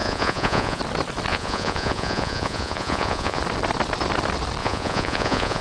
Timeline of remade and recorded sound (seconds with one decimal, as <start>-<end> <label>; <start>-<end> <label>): 0.0-0.8 remade; 0.8-1.3 recorded; 1.3-3.4 remade; 3.4-4.6 recorded; 4.6-5.6 remade